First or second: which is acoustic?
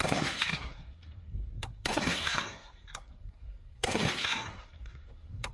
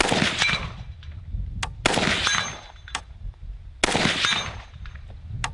second